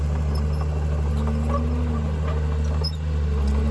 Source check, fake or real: real